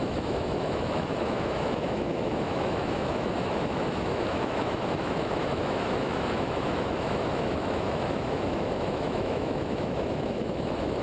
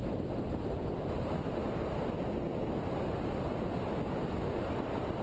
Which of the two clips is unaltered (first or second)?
second